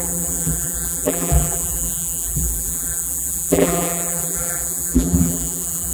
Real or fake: fake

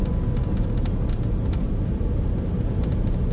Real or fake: real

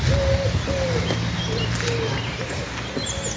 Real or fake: real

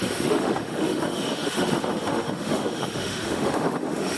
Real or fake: fake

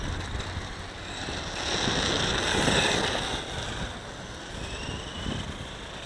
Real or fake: real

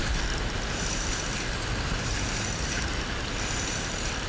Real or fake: real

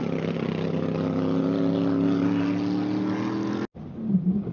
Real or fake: real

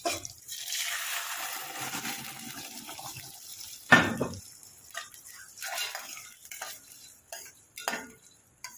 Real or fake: fake